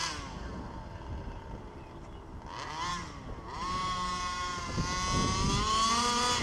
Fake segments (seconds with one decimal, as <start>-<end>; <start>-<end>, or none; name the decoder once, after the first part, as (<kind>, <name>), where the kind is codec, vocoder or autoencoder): none